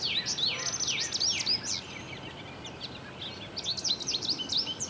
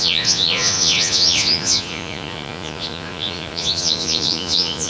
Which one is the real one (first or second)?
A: first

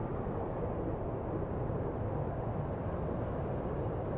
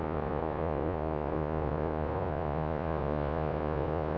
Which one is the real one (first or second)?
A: first